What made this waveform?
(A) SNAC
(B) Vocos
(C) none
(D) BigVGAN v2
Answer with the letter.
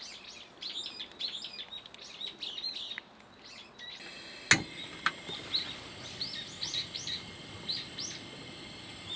C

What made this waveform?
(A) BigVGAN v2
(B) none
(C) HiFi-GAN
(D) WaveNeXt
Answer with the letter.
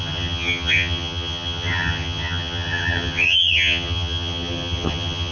C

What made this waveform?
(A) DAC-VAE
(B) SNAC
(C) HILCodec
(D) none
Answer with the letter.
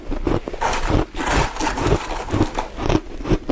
D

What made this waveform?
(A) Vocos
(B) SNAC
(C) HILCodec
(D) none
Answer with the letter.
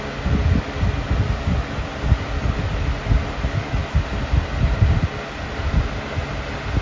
D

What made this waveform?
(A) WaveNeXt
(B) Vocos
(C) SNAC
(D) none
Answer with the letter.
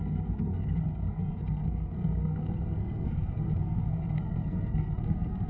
C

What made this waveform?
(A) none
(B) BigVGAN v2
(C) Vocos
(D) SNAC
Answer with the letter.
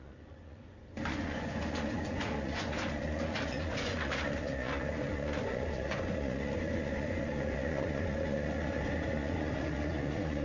C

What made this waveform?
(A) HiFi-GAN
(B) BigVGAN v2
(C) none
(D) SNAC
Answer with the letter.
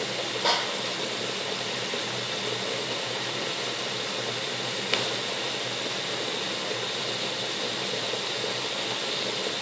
C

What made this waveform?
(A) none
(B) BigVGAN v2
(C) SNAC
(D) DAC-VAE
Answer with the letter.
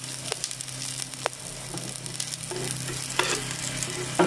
A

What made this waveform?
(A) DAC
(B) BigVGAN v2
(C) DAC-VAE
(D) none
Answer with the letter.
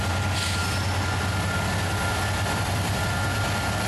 D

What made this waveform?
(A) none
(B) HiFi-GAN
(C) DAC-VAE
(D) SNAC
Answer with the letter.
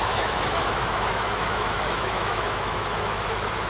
C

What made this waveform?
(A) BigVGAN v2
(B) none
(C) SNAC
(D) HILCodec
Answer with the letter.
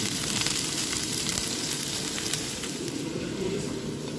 A